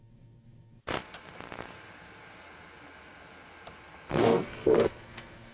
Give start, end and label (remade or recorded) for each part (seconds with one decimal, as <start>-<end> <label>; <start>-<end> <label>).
0.0-0.8 remade; 0.8-4.1 recorded; 4.1-5.5 remade